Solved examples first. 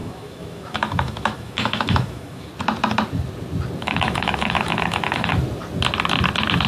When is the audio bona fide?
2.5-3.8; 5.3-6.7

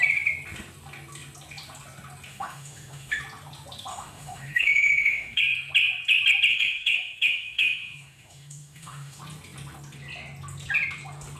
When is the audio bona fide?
0.0-2.3; 3.2-3.9; 5.4-6.5; 9.2-11.4

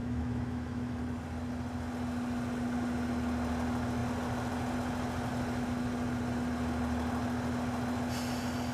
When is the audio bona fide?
1.0-8.7

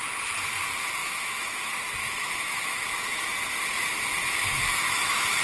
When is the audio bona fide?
0.0-1.0; 1.6-2.0

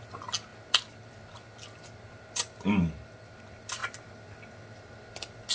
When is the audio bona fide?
0.0-5.5

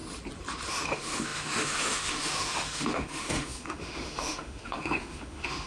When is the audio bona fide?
0.0-0.7

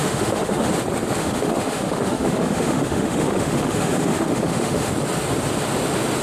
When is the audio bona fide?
0.7-1.2; 4.9-6.2